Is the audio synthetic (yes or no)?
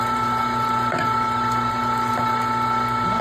no